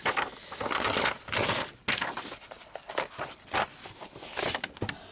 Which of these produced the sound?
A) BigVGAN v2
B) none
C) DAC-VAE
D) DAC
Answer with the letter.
B